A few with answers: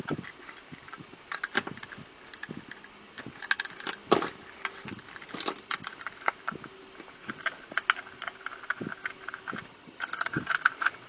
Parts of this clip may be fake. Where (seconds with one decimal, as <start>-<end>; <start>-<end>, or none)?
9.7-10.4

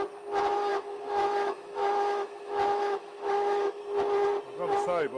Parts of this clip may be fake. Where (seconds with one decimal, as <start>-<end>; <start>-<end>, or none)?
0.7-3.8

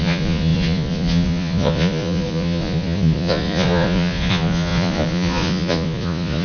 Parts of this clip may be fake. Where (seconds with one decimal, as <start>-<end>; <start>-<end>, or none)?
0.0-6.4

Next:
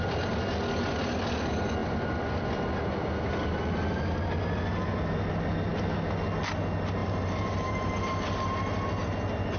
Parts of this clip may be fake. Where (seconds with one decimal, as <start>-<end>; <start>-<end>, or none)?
7.0-7.9

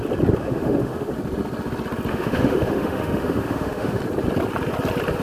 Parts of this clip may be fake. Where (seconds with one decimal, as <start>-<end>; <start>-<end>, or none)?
0.4-1.1; 2.1-4.0